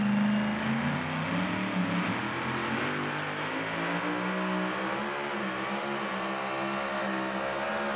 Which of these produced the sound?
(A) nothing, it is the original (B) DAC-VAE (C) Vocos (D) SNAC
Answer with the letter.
A